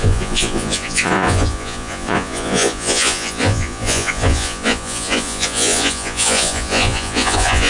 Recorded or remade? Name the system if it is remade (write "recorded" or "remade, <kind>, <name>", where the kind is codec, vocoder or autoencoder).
remade, vocoder, Vocos